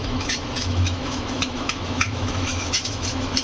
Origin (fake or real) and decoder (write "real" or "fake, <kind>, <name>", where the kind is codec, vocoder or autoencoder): fake, autoencoder, DAC-VAE